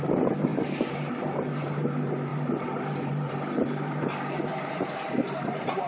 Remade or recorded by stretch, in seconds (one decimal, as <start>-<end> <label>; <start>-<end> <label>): 0.0-0.5 recorded; 0.5-1.1 remade; 1.1-2.3 recorded; 2.3-5.9 remade

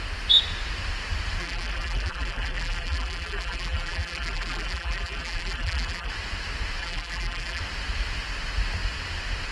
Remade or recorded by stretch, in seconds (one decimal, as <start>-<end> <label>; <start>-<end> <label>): 0.0-1.4 recorded; 1.4-6.1 remade; 6.1-6.8 recorded; 6.8-7.6 remade; 7.6-9.5 recorded

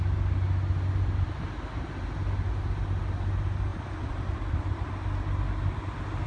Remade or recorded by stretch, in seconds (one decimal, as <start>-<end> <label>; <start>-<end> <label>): 0.0-3.7 recorded; 3.7-4.9 remade; 4.9-6.3 recorded

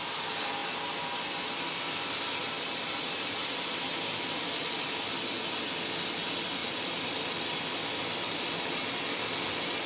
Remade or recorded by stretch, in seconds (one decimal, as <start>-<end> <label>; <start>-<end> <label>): 0.0-2.4 recorded; 2.4-5.0 remade; 5.0-6.6 recorded; 6.6-7.2 remade; 7.2-9.9 recorded

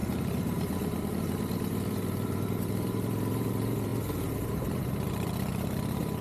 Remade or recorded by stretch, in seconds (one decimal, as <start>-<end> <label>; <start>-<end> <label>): 0.0-6.2 remade

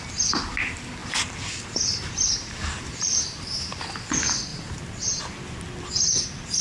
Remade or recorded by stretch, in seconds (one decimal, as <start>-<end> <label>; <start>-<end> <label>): 0.0-1.0 recorded; 1.0-3.8 remade; 3.8-4.5 recorded; 4.5-5.2 remade; 5.2-6.6 recorded

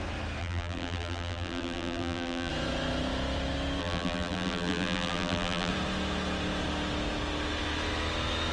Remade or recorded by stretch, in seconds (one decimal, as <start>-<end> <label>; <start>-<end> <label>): 0.0-0.4 recorded; 0.4-2.5 remade; 2.5-3.8 recorded; 3.8-5.7 remade; 5.7-8.5 recorded

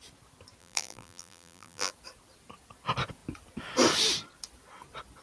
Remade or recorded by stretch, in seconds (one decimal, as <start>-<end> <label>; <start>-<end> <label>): 0.0-0.6 recorded; 0.6-1.9 remade; 1.9-5.2 recorded